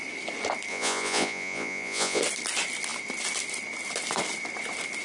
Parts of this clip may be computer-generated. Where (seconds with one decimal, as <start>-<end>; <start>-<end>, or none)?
0.7-2.2

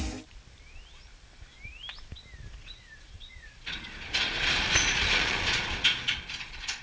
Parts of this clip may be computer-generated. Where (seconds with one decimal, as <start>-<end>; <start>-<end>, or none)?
2.6-6.8

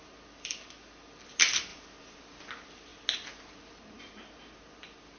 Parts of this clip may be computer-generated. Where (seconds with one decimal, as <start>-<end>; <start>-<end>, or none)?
1.7-2.5

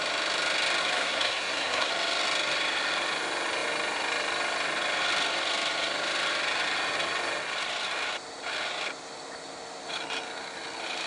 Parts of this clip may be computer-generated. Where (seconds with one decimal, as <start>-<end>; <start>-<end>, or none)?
0.8-1.9